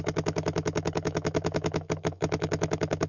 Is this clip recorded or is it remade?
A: remade